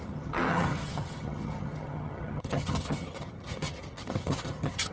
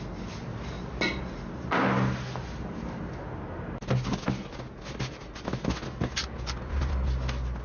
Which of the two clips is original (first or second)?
second